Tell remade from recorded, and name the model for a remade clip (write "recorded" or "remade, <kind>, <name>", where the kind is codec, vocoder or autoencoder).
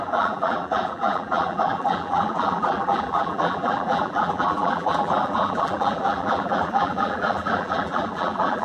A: remade, vocoder, BigVGAN v2